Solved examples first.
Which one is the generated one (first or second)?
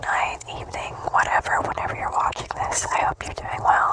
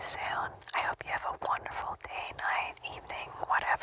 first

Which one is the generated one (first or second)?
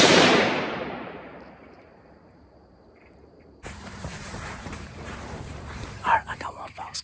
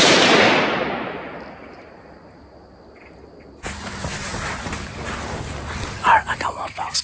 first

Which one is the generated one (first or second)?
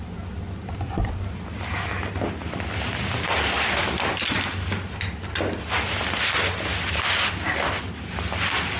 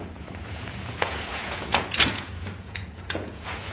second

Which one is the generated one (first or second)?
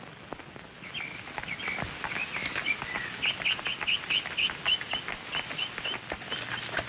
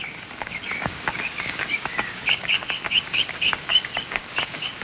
second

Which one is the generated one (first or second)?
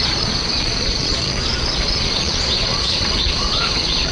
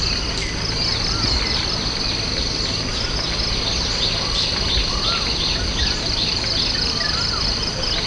first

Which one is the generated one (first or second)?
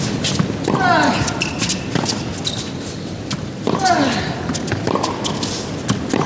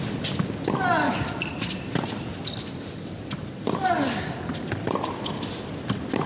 second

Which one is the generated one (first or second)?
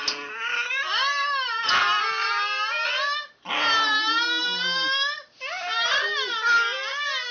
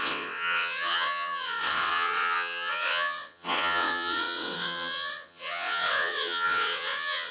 second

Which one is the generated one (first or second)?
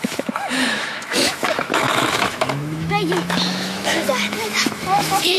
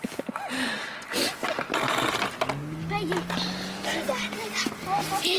first